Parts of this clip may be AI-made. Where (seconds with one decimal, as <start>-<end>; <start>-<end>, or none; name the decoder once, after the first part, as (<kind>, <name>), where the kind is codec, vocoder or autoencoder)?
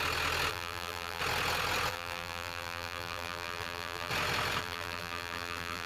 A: 0.5-1.2 (vocoder, BigVGAN v2); 1.9-4.1; 4.6-5.9